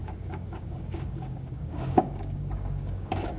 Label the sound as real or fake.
fake